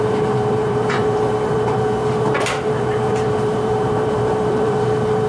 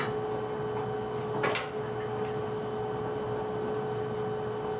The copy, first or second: first